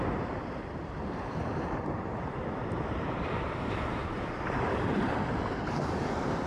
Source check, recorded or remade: remade